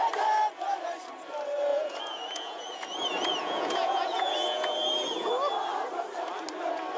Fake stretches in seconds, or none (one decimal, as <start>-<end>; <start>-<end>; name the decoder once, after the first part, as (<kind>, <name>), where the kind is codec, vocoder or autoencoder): 1.7-5.3 (vocoder, Vocos)

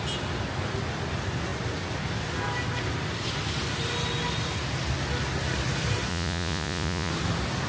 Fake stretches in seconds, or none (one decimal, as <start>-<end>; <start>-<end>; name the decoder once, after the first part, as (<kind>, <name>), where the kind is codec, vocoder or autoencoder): 6.1-7.1 (vocoder, Vocos)

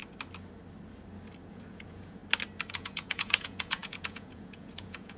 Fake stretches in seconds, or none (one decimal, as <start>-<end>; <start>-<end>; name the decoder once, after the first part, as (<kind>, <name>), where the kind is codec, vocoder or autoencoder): 1.5-2.2 (vocoder, Vocos); 2.7-5.2

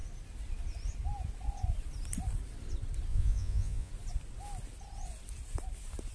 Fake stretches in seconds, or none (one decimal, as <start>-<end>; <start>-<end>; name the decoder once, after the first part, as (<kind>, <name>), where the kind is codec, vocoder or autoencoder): 3.1-3.9 (vocoder, Vocos)

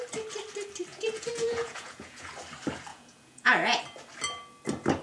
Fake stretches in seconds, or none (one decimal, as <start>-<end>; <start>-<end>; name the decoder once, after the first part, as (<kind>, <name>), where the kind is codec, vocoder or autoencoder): 0.9-2.3 (vocoder, Vocos); 2.9-3.8

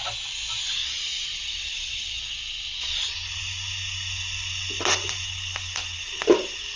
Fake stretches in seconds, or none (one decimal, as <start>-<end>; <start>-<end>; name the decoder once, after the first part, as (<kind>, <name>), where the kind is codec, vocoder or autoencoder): 1.3-2.1 (vocoder, Vocos)